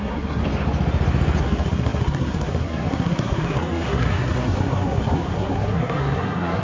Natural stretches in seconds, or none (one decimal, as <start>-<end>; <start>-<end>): 0.4-1.4